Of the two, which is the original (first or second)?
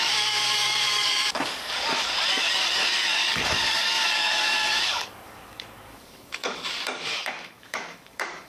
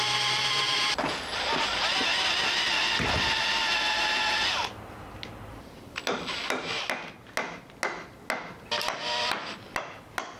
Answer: second